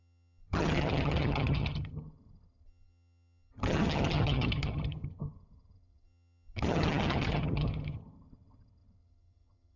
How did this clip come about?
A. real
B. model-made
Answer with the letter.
B